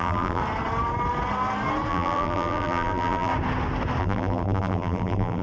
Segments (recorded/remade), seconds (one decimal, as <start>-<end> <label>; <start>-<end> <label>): 0.0-0.4 remade; 0.4-1.9 recorded; 1.9-3.3 remade; 3.3-4.0 recorded; 4.0-5.4 remade